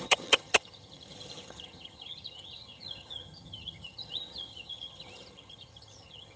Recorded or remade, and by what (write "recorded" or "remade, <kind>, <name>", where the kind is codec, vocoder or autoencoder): remade, vocoder, HiFi-GAN